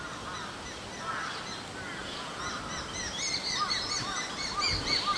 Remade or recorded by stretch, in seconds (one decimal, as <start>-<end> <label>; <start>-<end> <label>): 0.0-2.0 recorded; 2.0-2.5 remade; 2.5-5.2 recorded